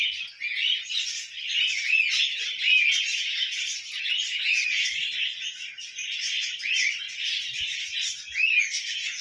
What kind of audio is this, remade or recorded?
recorded